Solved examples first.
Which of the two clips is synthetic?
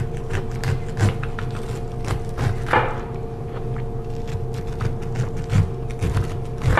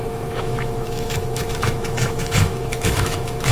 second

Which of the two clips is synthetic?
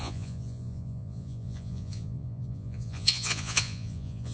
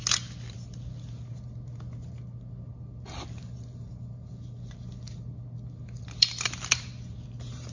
first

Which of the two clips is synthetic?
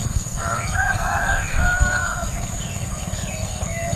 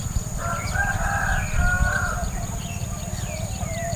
first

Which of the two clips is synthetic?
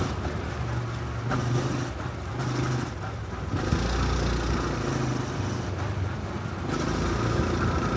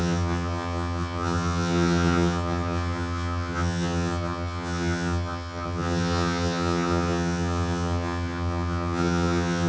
second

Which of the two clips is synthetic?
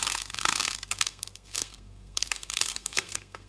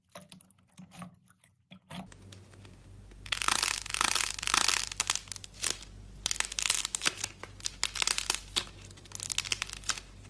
first